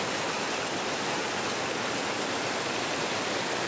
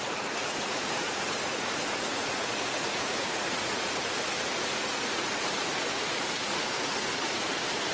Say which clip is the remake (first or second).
second